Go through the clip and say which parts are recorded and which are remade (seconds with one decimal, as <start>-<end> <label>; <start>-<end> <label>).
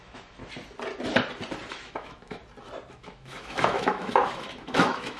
0.0-0.4 remade; 0.4-1.7 recorded; 1.7-2.4 remade; 2.4-2.9 recorded; 2.9-5.2 remade